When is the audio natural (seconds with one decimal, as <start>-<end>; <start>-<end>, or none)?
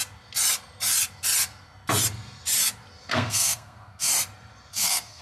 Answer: 0.0-3.1; 4.1-4.7